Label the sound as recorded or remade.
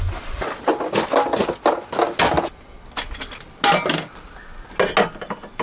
recorded